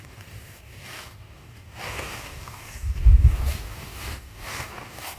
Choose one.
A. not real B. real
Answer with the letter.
A